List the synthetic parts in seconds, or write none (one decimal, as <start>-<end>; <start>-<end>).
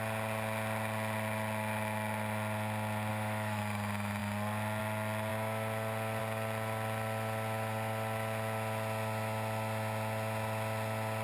3.1-3.6